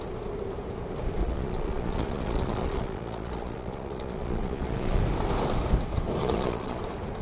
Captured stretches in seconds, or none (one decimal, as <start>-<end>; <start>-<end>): 0.0-1.2; 5.0-6.2; 6.8-7.2